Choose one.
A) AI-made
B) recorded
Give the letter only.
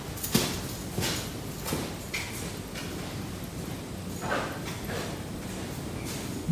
B